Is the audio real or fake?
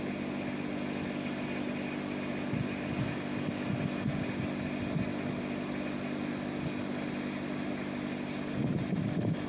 real